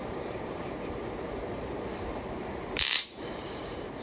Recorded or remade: remade